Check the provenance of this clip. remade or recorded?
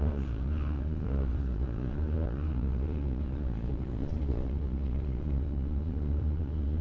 remade